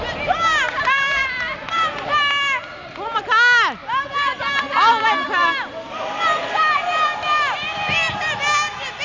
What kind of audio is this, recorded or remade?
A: recorded